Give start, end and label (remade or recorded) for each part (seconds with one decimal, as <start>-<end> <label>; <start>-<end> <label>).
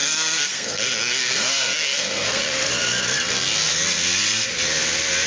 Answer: 0.0-2.4 remade; 2.4-5.3 recorded